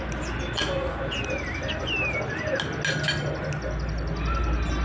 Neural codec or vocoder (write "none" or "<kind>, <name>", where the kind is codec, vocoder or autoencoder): none